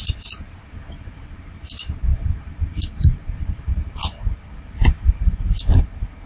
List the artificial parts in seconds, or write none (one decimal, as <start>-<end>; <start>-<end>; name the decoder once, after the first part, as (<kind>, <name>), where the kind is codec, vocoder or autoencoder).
0.0-6.3 (vocoder, BigVGAN v2)